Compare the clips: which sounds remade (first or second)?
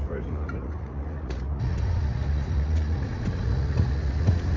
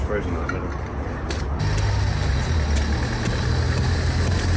first